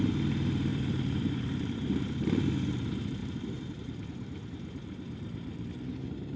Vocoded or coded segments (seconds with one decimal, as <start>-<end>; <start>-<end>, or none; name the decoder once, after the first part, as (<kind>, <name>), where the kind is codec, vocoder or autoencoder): 0.7-2.5 (vocoder, BigVGAN v2); 3.2-5.7